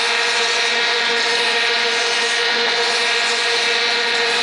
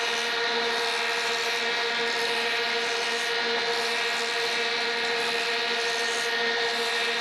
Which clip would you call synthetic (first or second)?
first